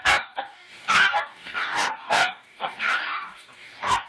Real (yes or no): no